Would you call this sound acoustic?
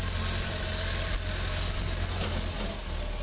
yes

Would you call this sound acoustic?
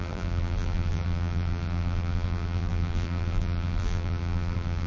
no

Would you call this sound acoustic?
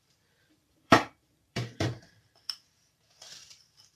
no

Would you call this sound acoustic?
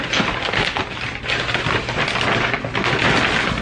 yes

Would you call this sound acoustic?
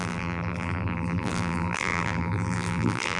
no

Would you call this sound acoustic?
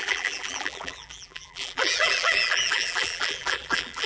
no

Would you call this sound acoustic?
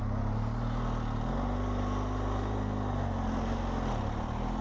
yes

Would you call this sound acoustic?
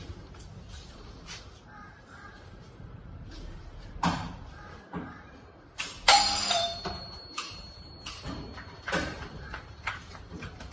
no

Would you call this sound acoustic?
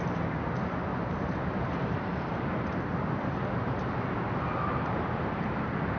no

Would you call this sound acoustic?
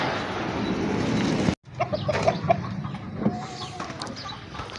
yes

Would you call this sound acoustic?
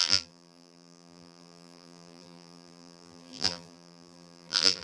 no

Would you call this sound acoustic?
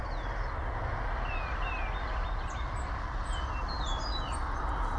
yes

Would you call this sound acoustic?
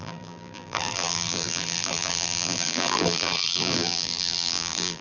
no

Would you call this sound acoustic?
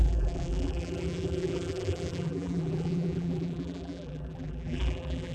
no